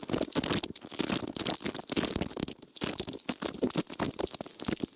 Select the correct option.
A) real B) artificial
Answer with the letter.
A